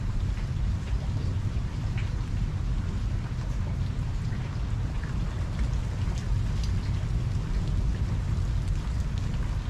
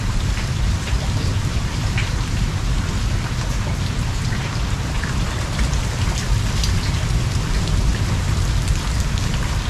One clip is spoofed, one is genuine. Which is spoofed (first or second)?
second